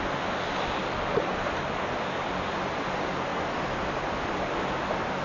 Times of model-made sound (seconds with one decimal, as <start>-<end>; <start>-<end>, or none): none